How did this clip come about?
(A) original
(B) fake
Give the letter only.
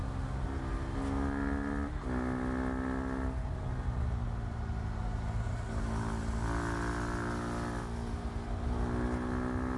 A